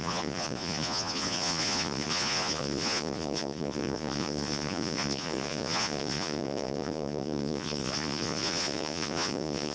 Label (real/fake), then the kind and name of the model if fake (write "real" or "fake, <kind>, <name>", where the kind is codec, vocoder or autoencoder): fake, vocoder, Vocos